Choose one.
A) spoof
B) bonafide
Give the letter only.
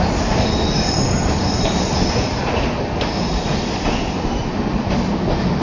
B